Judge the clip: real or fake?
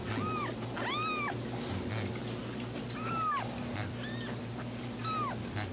real